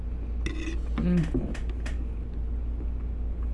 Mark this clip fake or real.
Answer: real